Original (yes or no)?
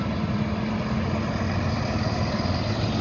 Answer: yes